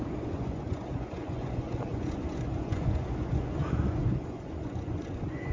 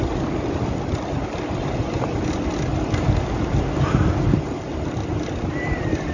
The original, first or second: second